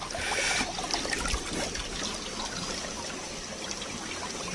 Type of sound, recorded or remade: recorded